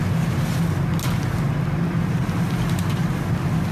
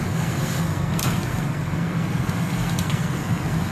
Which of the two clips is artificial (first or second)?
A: second